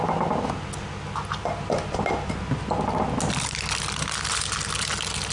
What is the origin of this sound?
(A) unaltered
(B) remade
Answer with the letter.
A